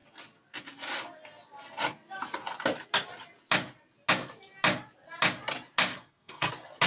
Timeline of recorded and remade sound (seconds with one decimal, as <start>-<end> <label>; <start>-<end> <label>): 0.0-5.9 recorded; 5.9-6.5 remade; 6.5-6.9 recorded